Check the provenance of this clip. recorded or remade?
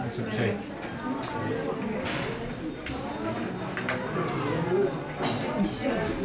recorded